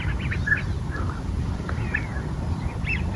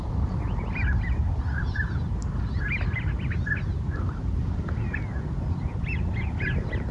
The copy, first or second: first